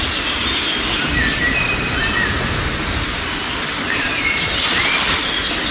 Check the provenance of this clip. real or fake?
real